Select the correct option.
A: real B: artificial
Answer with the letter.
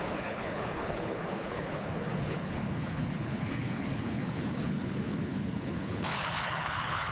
B